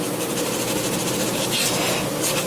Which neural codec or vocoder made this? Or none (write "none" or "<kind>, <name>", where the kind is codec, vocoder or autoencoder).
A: none